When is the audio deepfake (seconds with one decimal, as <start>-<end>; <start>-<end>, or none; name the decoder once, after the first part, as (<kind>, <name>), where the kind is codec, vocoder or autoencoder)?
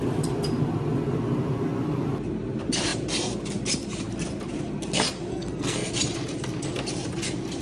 5.3-5.9 (codec, SNAC)